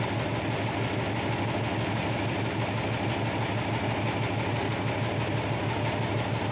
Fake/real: real